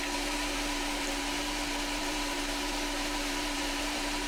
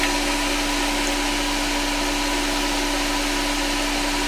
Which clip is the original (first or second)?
second